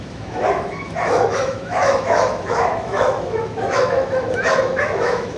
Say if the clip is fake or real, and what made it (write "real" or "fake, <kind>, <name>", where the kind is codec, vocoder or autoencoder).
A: fake, autoencoder, DAC-VAE